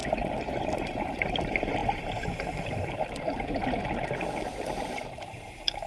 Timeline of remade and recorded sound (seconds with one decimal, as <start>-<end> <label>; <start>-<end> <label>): 0.0-1.8 remade; 1.8-3.2 recorded; 3.2-3.6 remade; 3.6-5.2 recorded; 5.2-5.9 remade